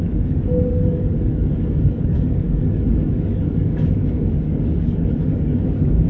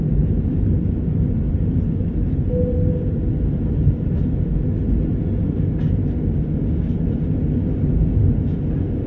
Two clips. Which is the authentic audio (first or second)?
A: second